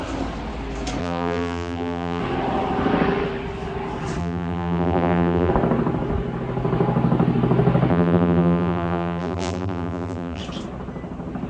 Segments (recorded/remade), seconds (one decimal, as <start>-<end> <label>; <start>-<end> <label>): 0.0-1.0 recorded; 1.0-2.2 remade; 2.2-4.2 recorded; 4.2-5.5 remade; 5.5-7.9 recorded; 7.9-10.4 remade; 10.4-11.5 recorded